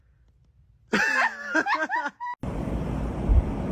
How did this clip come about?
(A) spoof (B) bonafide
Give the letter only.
B